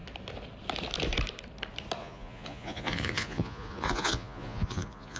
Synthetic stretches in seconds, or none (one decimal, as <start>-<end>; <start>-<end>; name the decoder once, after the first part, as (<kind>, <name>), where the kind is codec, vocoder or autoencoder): 2.0-5.2 (vocoder, Vocos)